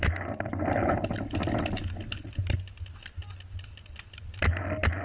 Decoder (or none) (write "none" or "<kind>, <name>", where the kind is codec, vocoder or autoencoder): none